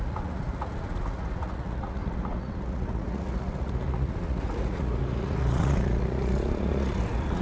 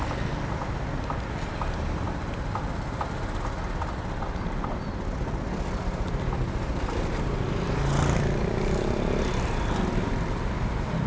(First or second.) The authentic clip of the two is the second